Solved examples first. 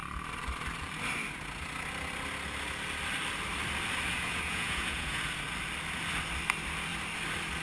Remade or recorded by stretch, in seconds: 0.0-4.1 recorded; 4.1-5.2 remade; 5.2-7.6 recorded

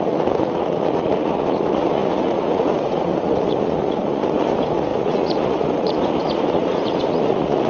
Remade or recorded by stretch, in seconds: 0.0-7.7 remade

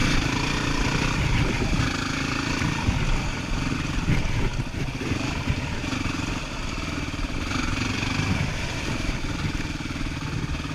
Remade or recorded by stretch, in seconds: 0.0-10.7 recorded

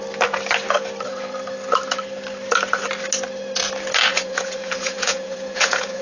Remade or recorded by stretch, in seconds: 0.0-4.1 recorded; 4.1-6.0 remade

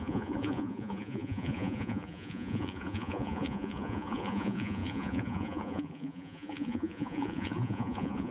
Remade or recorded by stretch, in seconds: 0.0-8.3 remade

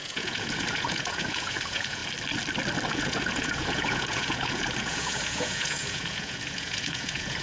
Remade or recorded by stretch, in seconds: 0.0-2.0 remade; 2.0-2.9 recorded; 2.9-7.4 remade